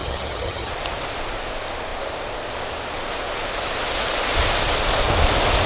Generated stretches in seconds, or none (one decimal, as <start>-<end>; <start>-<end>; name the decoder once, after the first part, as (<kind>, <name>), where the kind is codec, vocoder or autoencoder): 0.0-0.7 (vocoder, HiFi-GAN)